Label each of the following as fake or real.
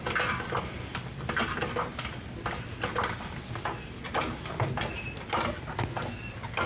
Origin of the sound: real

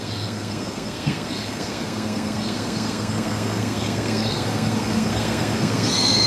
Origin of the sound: fake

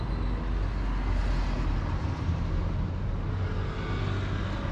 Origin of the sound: real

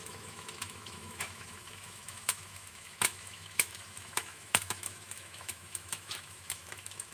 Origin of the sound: fake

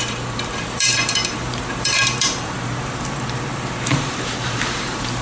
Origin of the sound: fake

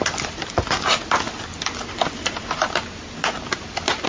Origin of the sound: real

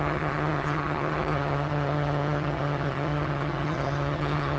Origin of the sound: fake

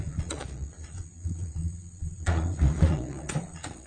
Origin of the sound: fake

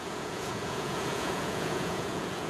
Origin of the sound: fake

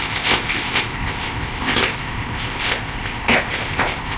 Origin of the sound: fake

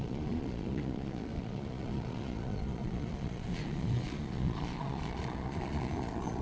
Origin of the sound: fake